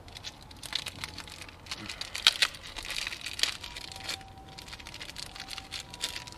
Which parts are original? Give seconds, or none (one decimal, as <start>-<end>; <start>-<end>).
0.0-6.4

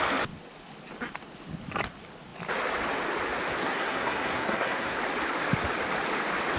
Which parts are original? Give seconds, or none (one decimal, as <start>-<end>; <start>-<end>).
0.0-3.6; 5.0-6.6

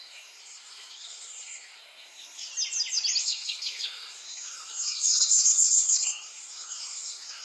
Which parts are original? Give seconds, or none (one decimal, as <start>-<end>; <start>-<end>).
2.5-3.2

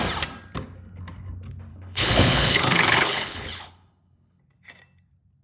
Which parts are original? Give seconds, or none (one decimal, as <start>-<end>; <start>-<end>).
0.0-1.7; 4.4-5.4

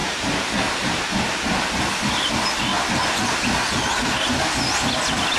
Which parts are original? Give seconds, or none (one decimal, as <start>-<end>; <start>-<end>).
2.3-4.0; 4.6-5.4

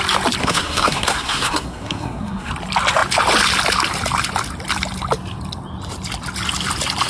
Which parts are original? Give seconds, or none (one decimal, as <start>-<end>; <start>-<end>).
0.0-0.4; 2.5-7.1